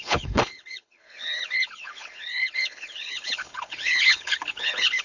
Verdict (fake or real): fake